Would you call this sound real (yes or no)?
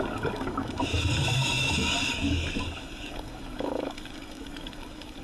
no